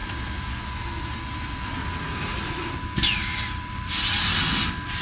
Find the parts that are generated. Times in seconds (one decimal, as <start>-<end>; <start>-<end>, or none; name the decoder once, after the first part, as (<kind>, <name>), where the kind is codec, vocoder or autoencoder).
0.0-1.7 (vocoder, BigVGAN v2); 2.3-3.9

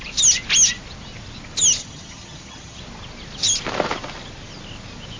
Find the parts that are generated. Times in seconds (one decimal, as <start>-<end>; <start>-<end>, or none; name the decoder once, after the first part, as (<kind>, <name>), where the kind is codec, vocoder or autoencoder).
1.8-2.8 (vocoder, HiFi-GAN)

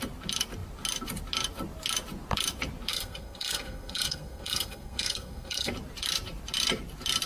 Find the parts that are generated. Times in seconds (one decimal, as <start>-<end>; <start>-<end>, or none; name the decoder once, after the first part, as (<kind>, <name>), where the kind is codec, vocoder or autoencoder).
2.9-5.7 (codec, SNAC)

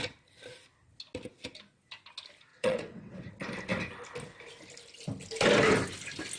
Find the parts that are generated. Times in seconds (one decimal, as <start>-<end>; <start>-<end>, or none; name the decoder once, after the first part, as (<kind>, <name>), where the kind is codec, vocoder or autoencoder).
2.5-3.3 (vocoder, WaveNeXt)

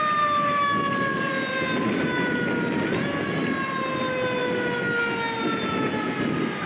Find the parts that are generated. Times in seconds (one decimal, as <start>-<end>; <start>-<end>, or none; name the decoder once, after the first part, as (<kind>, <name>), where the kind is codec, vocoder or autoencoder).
1.1-1.9 (vocoder, BigVGAN v2)

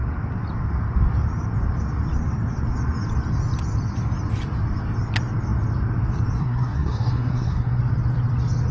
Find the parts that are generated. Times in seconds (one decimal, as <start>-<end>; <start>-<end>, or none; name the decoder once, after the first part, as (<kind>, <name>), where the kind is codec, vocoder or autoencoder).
6.4-7.8 (codec, SNAC)

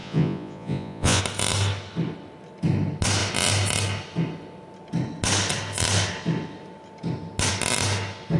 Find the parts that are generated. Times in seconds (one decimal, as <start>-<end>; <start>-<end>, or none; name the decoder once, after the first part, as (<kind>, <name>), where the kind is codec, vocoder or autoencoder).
0.0-1.2 (vocoder, Vocos)